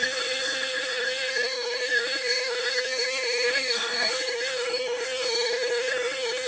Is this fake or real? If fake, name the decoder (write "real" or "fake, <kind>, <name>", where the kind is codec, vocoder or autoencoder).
fake, codec, SNAC